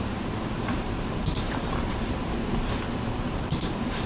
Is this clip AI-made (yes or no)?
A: yes